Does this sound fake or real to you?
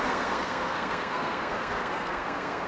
fake